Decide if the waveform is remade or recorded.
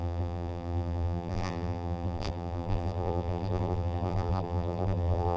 remade